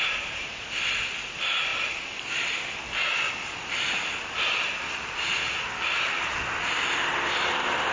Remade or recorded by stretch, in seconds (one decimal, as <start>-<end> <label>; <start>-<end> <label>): 0.0-7.9 recorded